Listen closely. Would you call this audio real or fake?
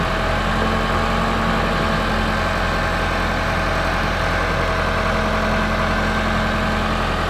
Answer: real